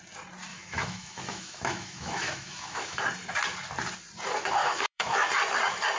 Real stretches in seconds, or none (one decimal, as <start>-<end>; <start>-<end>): 0.0-0.5; 3.0-4.6; 5.3-6.0